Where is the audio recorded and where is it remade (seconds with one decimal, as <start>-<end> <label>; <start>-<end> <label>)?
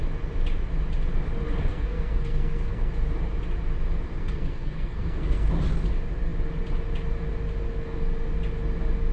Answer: 0.0-1.7 recorded; 1.7-2.9 remade; 2.9-4.2 recorded; 4.2-5.5 remade; 5.5-9.1 recorded